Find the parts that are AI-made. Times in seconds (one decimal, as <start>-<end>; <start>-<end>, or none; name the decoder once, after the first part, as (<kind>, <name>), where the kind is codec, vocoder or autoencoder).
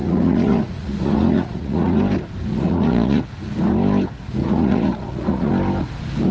0.0-2.0 (vocoder, Vocos); 2.5-3.2; 4.4-5.5